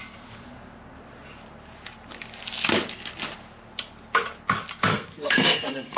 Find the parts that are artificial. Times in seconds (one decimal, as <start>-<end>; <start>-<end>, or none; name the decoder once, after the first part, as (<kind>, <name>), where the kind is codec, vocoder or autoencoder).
4.9-6.0 (codec, SNAC)